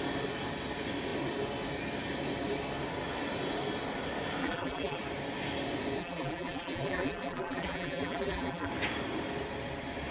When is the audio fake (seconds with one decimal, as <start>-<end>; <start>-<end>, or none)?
4.4-5.0; 6.0-8.7

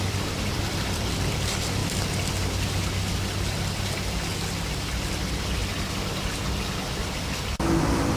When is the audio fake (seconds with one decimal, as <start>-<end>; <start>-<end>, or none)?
0.0-1.8; 5.1-5.6; 7.5-8.2